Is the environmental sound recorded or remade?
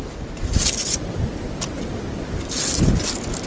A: recorded